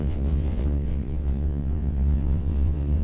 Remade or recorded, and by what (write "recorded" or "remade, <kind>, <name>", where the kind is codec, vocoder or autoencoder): remade, vocoder, WaveNeXt